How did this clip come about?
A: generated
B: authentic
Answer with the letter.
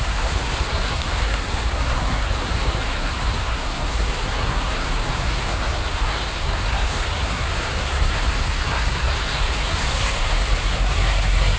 A